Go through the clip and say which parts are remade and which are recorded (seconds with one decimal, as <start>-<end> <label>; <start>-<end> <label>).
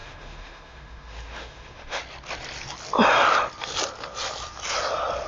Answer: 0.0-2.0 remade; 2.0-5.3 recorded